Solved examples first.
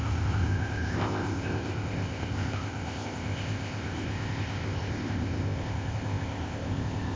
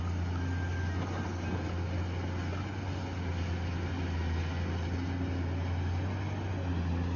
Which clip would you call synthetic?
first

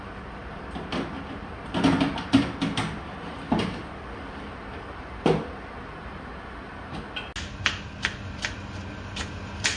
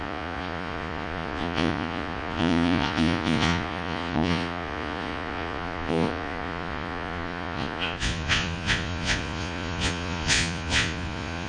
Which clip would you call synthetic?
second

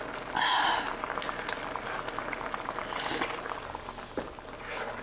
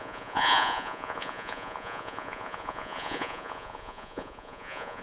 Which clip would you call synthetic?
second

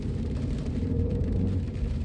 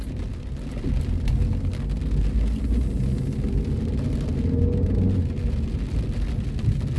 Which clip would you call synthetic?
first